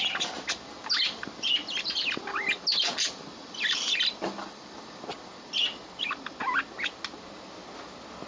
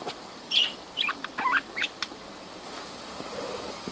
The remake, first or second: second